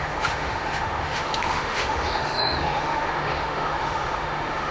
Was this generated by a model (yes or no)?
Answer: yes